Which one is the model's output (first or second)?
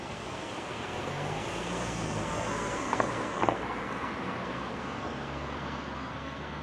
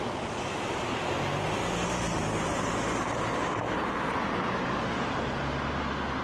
first